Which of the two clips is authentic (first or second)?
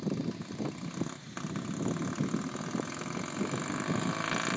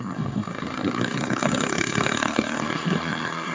first